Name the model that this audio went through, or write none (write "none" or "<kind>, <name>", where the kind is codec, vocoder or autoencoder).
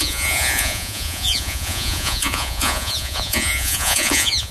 vocoder, Vocos